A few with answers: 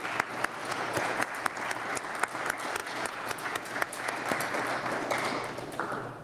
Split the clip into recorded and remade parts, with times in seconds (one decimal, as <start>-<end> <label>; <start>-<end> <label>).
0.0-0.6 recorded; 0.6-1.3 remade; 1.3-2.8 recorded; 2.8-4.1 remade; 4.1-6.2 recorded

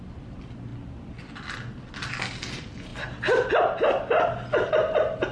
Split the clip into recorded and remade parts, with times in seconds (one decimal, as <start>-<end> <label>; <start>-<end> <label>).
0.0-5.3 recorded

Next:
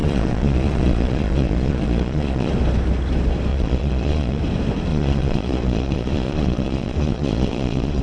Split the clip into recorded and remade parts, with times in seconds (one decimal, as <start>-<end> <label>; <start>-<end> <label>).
0.0-2.5 remade; 2.5-3.5 recorded; 3.5-4.4 remade; 4.4-4.9 recorded; 4.9-8.0 remade

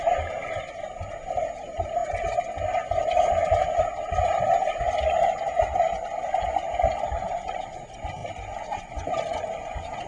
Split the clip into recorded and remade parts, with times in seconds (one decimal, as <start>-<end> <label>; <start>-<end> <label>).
0.0-10.1 recorded

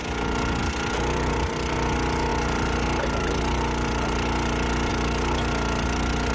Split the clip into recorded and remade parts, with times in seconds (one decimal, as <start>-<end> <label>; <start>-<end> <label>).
0.0-6.3 recorded